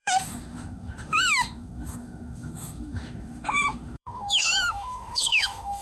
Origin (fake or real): fake